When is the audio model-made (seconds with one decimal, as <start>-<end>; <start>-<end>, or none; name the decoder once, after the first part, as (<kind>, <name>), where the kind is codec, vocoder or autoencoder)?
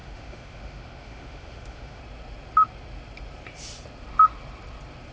0.0-2.0 (autoencoder, DAC-VAE)